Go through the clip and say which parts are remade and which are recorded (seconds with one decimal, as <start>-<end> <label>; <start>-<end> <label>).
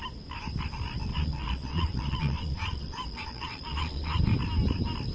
0.0-1.1 recorded; 1.1-4.2 remade; 4.2-5.1 recorded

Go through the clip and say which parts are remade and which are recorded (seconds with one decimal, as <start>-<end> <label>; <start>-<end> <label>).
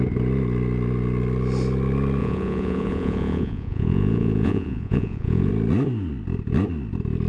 0.0-2.2 recorded; 2.2-5.5 remade; 5.5-7.3 recorded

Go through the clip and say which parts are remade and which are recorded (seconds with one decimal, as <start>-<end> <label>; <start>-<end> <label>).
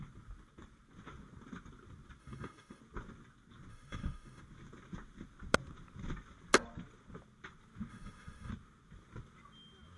0.0-2.2 recorded; 2.2-2.8 remade; 2.8-3.7 recorded; 3.7-4.4 remade; 4.4-7.9 recorded; 7.9-8.5 remade; 8.5-10.0 recorded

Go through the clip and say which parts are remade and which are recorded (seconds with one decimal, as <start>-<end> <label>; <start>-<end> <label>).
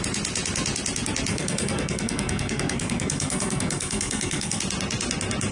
0.0-1.3 recorded; 1.3-4.6 remade; 4.6-5.5 recorded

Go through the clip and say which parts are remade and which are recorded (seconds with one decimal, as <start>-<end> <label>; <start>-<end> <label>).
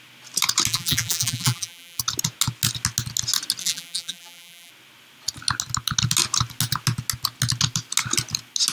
0.0-0.7 recorded; 0.7-2.0 remade; 2.0-3.6 recorded; 3.6-4.7 remade; 4.7-8.7 recorded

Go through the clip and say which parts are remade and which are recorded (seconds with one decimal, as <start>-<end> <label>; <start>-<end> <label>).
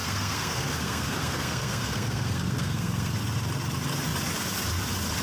0.0-3.1 remade; 3.1-5.2 recorded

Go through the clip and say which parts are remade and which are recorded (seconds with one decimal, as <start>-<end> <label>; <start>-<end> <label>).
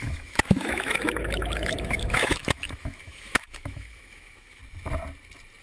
0.0-4.6 remade; 4.6-5.6 recorded